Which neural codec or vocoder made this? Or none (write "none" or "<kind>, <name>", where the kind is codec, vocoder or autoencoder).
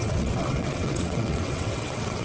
vocoder, WaveNeXt